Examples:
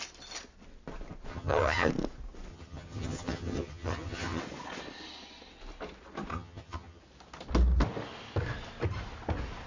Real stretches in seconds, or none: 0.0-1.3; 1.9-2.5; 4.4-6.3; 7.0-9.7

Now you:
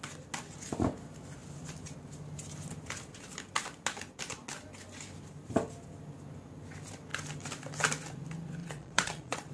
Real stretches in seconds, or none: 0.0-8.6